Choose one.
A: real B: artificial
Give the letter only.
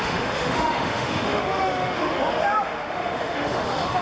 B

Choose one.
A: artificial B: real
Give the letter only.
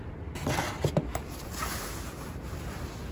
B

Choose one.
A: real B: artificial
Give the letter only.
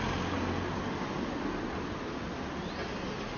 A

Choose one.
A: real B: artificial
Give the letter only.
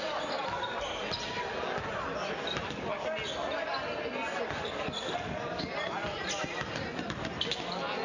A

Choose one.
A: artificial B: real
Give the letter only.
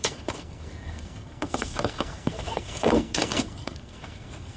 A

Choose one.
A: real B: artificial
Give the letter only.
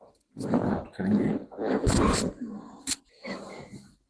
A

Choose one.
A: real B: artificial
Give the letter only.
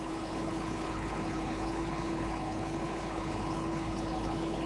B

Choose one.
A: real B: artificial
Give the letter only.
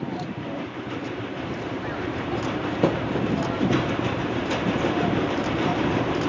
B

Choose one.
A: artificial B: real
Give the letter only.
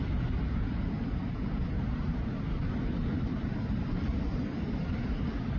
B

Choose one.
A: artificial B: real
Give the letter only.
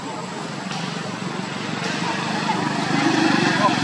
B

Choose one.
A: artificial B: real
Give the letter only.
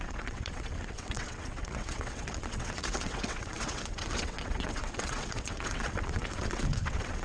A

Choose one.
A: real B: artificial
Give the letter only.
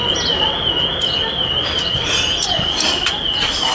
A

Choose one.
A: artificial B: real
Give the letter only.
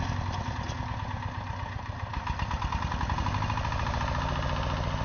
B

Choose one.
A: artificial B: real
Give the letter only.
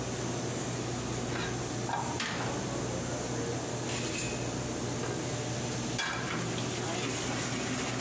B